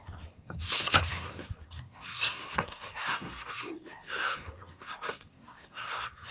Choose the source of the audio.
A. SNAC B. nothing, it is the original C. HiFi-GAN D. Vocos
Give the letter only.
A